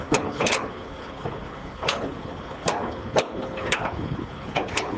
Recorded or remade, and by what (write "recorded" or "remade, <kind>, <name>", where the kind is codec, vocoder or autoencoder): remade, codec, HILCodec